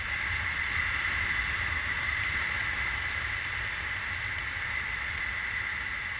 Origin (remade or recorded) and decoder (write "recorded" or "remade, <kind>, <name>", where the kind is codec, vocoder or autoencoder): recorded